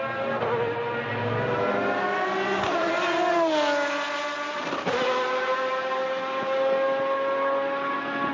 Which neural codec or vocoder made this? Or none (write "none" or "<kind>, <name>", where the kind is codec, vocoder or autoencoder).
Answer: none